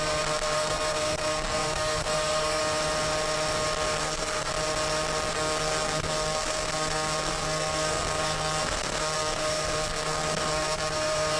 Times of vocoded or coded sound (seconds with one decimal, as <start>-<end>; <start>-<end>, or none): 0.0-2.6; 4.0-4.5; 5.3-11.4